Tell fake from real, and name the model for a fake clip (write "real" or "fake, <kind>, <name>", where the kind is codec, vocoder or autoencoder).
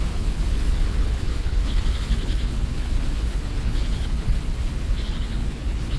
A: fake, codec, HILCodec